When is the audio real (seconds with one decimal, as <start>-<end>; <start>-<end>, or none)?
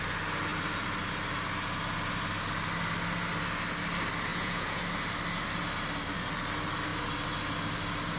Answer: 0.0-4.3; 4.8-8.2